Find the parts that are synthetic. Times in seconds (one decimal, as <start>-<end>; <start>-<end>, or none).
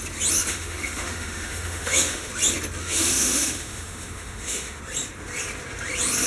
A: 0.5-2.3; 2.8-4.8